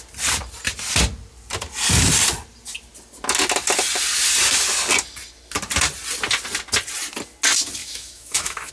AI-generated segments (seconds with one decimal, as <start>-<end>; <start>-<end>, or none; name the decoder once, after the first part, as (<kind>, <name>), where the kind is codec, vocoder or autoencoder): 7.8-8.7 (autoencoder, DAC-VAE)